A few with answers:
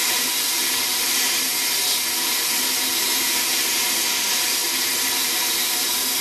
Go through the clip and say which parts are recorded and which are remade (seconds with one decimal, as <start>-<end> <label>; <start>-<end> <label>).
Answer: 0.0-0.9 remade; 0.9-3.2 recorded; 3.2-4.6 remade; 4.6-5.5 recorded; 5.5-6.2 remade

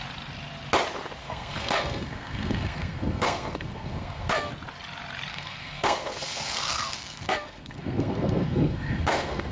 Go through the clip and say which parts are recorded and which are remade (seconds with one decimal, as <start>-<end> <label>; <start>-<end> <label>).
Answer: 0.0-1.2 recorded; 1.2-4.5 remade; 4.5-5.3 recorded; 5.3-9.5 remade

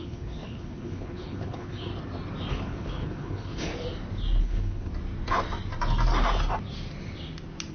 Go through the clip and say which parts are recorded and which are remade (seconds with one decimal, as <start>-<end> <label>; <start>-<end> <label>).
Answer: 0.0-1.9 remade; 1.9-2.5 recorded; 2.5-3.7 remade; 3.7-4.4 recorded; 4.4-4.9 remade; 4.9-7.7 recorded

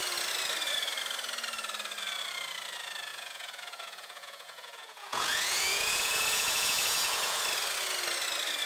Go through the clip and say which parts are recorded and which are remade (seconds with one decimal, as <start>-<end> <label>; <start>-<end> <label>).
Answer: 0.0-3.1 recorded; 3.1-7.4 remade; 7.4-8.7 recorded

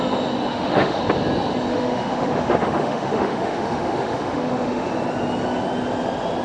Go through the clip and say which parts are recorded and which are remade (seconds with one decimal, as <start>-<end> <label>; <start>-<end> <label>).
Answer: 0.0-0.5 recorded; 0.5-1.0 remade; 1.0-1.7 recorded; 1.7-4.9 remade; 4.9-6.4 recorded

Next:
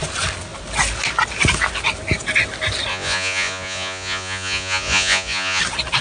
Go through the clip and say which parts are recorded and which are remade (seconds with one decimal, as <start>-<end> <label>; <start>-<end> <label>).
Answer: 0.0-2.9 recorded; 2.9-5.6 remade; 5.6-6.0 recorded